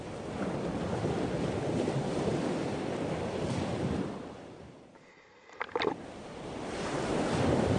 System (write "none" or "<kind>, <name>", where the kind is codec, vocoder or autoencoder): vocoder, BigVGAN v2